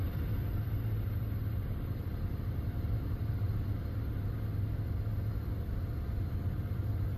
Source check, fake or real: fake